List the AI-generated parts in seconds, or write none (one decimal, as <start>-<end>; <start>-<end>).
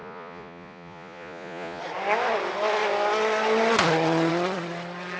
0.0-1.8